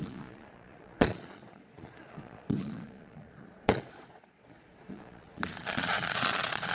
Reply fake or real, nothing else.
fake